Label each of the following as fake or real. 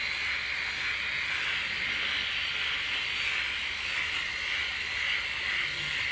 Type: real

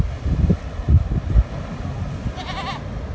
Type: real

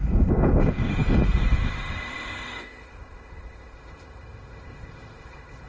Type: fake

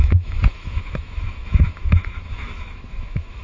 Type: fake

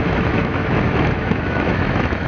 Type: fake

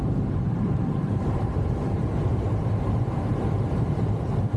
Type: fake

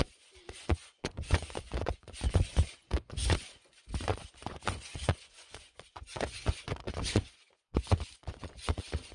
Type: fake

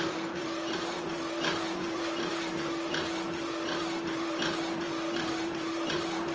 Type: fake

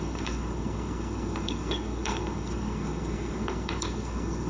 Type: fake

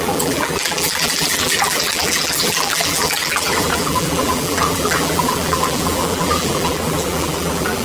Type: fake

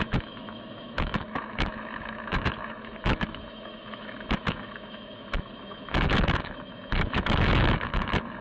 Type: fake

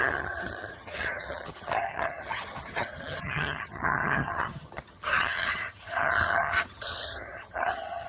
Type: fake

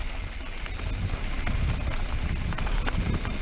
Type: real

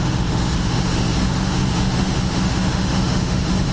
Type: fake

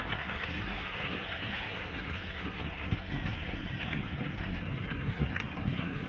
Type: fake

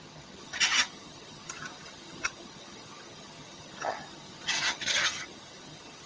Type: fake